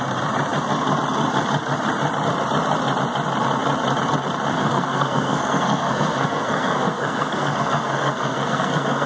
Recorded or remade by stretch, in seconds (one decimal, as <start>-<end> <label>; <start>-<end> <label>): 0.0-4.5 recorded; 4.5-9.1 remade

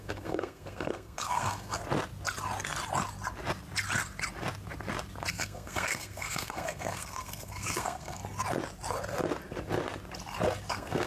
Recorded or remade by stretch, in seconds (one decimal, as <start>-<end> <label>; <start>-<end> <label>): 0.0-1.8 remade; 1.8-5.3 recorded; 5.3-8.2 remade; 8.2-10.7 recorded; 10.7-11.1 remade

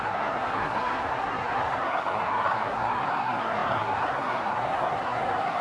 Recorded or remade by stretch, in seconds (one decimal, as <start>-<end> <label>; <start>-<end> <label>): 0.0-5.6 remade

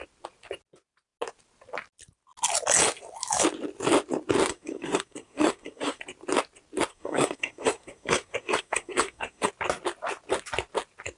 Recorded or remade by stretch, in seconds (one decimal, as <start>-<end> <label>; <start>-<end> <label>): 0.0-4.5 recorded; 4.5-6.0 remade; 6.0-6.9 recorded; 6.9-9.5 remade; 9.5-11.2 recorded

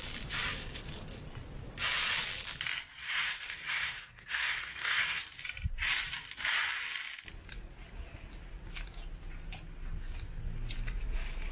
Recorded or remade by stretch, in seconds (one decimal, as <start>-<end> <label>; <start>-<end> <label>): 0.0-3.0 recorded; 3.0-5.2 remade; 5.2-11.5 recorded

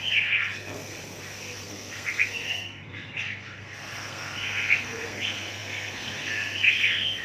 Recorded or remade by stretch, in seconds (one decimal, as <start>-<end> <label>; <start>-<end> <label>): 0.0-7.2 remade

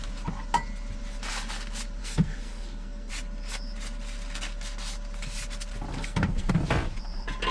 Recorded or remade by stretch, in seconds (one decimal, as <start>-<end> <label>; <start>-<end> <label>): 0.0-2.0 recorded; 2.0-3.1 remade; 3.1-5.9 recorded; 5.9-6.5 remade; 6.5-7.5 recorded

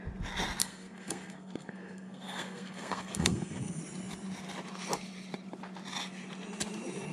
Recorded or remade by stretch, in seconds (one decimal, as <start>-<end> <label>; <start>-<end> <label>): 0.0-0.6 recorded; 0.6-3.8 remade; 3.8-7.1 recorded